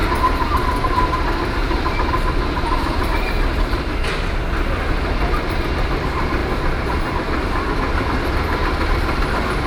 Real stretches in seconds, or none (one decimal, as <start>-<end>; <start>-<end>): none